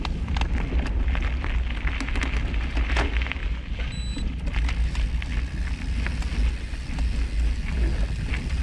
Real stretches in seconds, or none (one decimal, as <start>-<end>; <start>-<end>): 0.0-8.6